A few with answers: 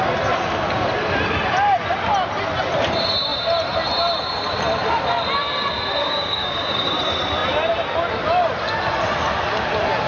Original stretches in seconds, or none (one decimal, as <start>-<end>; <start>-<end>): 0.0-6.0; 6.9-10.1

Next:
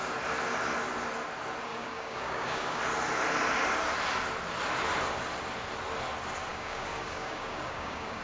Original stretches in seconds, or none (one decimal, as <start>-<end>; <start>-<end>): 0.0-1.7; 2.8-6.5

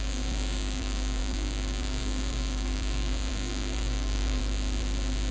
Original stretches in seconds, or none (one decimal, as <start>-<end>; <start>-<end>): 4.4-5.3

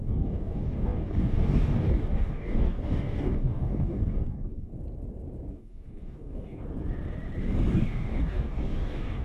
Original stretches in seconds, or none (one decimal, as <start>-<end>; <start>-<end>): 4.7-5.5; 6.6-7.7